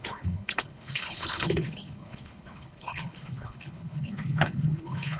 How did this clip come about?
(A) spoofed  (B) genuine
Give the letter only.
A